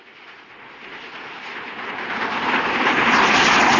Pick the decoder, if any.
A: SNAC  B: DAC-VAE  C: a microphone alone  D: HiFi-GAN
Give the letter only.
C